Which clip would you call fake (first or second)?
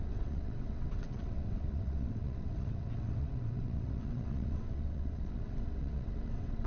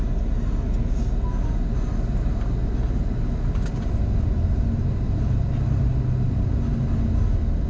first